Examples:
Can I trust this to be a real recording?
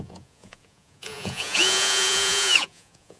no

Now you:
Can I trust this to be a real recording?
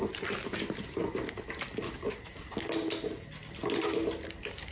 yes